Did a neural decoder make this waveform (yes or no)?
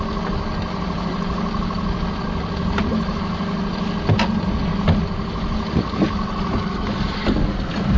no